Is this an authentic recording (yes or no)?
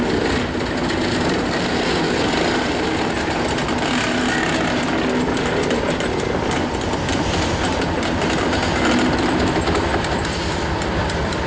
yes